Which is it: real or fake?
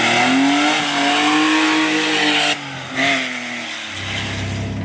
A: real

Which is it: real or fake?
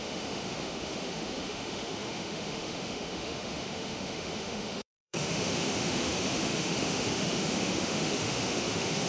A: fake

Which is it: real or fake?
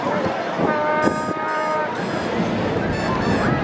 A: real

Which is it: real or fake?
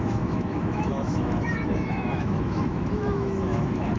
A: fake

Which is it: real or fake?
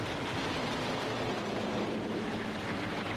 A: real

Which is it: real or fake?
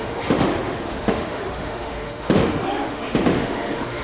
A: fake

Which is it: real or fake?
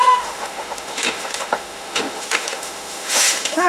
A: fake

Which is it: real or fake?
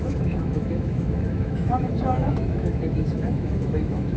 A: fake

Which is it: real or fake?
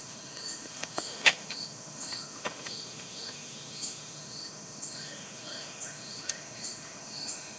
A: fake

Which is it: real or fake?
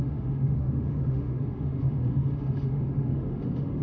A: fake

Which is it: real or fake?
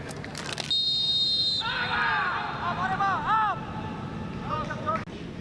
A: real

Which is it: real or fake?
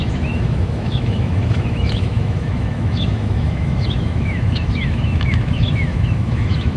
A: fake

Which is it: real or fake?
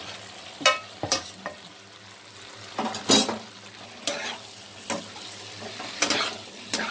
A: real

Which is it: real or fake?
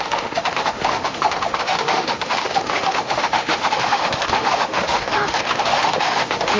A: fake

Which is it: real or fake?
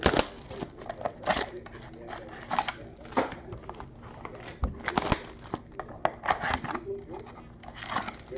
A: real